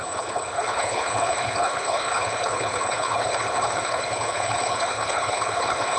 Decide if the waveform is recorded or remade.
remade